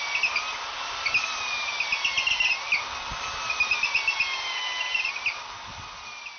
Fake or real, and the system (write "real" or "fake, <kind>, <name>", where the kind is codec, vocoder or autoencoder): real